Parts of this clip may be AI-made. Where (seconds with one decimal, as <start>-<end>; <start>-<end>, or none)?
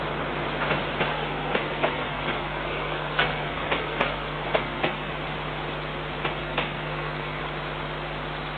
1.1-5.1; 6.4-7.4